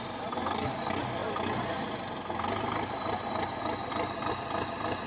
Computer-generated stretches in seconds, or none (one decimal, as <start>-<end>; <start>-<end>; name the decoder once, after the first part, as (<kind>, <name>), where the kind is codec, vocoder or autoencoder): none